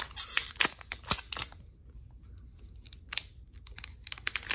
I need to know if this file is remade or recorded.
recorded